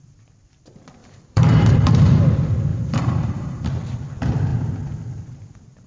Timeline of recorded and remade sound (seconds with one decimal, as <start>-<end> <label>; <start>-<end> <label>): 0.0-1.0 recorded; 1.0-2.2 remade; 2.2-2.7 recorded; 2.7-3.6 remade; 3.6-5.9 recorded